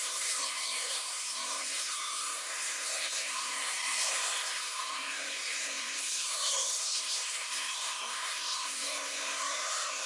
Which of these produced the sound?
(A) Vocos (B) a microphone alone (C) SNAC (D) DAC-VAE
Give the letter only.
C